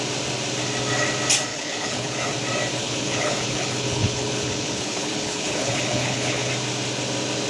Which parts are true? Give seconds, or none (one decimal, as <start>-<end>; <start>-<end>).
0.0-1.5; 2.3-2.8; 6.5-7.5